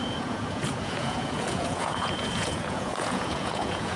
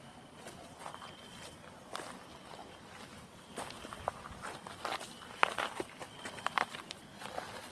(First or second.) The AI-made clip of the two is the first